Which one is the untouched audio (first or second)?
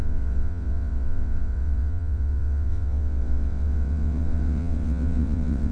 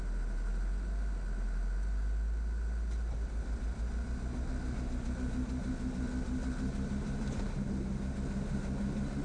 second